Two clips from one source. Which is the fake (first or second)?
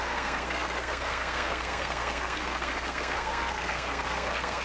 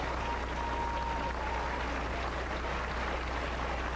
first